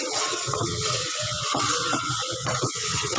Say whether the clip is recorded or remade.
remade